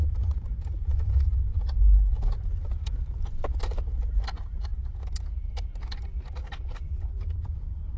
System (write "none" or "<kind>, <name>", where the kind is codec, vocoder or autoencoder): none